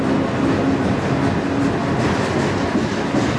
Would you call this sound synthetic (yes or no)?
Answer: no